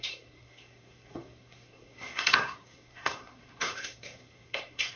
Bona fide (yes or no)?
no